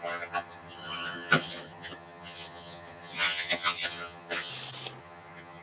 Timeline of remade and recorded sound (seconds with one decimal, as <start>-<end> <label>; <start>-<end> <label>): 0.0-4.5 remade; 4.5-5.0 recorded; 5.0-5.6 remade